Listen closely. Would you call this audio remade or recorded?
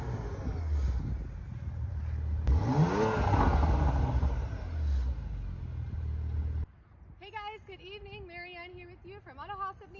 recorded